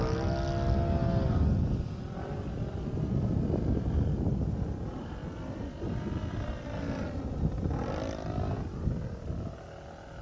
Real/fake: real